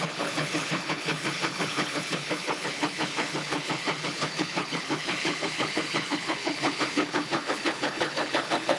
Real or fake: fake